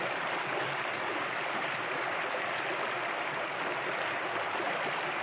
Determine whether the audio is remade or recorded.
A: recorded